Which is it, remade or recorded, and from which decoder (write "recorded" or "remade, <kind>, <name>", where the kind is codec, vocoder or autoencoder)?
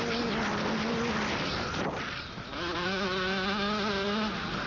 recorded